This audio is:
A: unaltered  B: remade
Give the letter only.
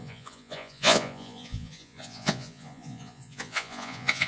B